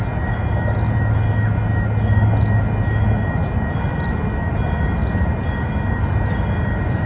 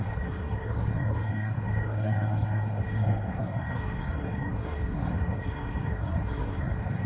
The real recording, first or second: first